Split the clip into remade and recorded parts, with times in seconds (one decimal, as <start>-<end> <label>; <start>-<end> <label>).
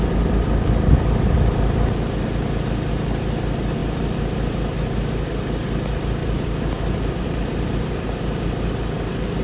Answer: 0.0-6.2 recorded; 6.2-7.9 remade; 7.9-9.4 recorded